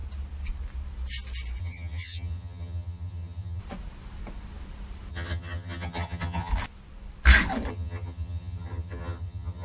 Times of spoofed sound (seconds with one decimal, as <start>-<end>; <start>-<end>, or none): 1.6-3.6; 5.1-6.5; 7.7-9.6